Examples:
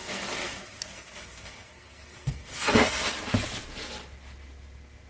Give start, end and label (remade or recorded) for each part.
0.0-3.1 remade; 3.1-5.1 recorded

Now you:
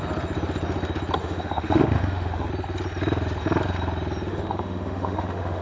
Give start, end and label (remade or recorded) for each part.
0.0-1.2 recorded; 1.2-2.5 remade; 2.5-4.3 recorded; 4.3-5.6 remade

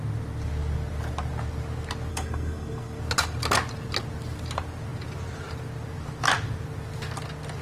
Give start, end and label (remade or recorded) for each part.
0.0-2.1 recorded; 2.1-3.0 remade; 3.0-7.6 recorded

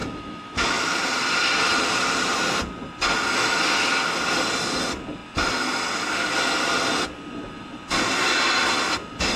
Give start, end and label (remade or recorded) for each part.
0.0-1.0 remade; 1.0-9.4 recorded

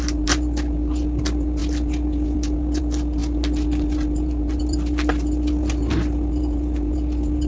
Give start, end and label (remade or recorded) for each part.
0.0-7.5 recorded

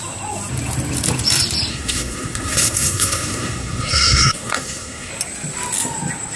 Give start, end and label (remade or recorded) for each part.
0.0-1.7 recorded; 1.7-5.1 remade; 5.1-6.4 recorded

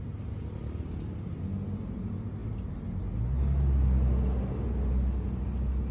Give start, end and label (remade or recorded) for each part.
0.0-5.9 recorded